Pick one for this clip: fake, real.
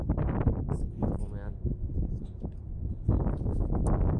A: real